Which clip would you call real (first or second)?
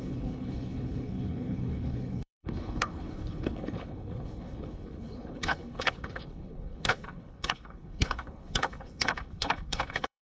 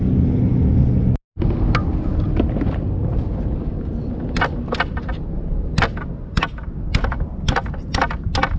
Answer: second